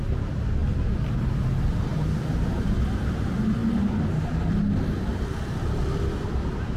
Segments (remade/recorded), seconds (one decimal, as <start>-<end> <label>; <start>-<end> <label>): 0.0-6.8 recorded